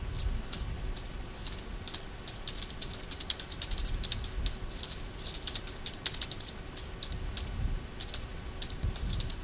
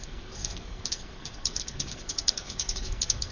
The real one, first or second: first